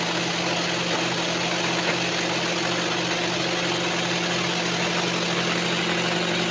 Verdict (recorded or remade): recorded